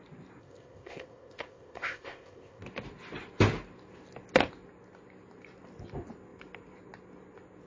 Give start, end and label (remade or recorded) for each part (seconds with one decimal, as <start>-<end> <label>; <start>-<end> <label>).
0.0-0.4 recorded; 0.4-2.6 remade; 2.6-7.7 recorded